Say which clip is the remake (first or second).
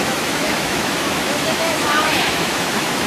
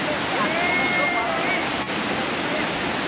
first